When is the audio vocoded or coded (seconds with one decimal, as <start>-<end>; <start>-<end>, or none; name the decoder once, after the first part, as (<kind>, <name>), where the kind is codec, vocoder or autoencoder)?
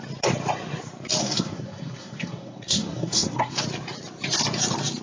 1.2-3.6 (codec, SNAC)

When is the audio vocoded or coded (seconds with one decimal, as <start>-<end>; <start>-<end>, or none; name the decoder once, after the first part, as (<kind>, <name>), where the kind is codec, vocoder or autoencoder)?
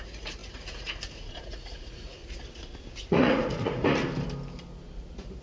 0.0-2.2 (vocoder, Vocos); 3.0-4.0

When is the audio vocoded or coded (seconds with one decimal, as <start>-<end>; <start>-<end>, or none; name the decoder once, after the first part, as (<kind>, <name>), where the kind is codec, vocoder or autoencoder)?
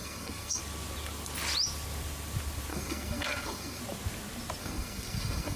0.0-0.6 (codec, SNAC); 2.7-3.8; 4.6-5.6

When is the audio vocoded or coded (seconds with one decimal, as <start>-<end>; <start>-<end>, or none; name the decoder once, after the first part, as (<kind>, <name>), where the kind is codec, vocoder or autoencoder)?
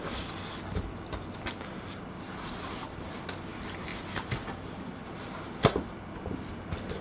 none